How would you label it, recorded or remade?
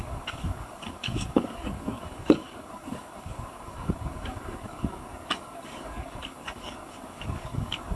remade